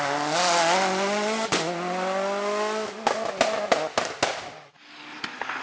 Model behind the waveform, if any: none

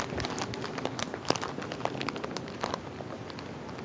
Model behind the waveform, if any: none